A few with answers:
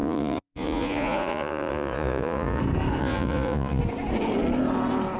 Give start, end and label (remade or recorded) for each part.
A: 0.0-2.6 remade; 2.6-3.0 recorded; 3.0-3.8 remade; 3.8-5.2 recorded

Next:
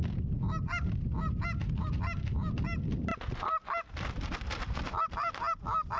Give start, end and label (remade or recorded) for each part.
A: 0.0-6.0 recorded